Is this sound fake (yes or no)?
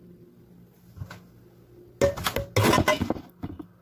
no